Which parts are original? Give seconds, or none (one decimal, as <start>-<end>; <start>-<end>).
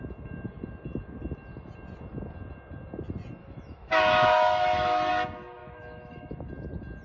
0.0-3.4; 5.1-5.6; 6.5-7.0